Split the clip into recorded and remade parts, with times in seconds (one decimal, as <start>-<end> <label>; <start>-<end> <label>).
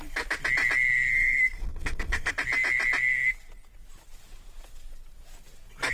0.0-1.1 recorded; 1.1-2.3 remade; 2.3-5.9 recorded